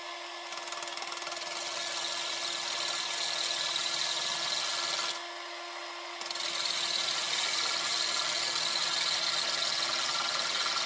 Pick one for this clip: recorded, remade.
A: recorded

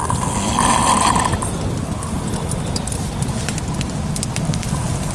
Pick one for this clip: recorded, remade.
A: recorded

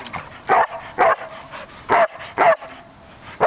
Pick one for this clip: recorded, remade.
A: recorded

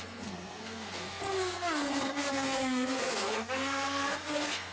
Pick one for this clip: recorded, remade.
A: remade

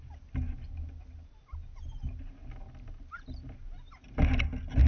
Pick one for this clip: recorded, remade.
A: recorded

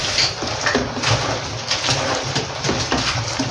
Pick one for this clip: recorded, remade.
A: recorded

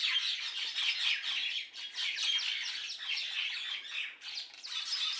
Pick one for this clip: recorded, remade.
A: recorded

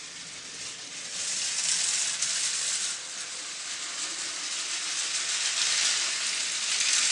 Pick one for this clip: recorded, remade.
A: recorded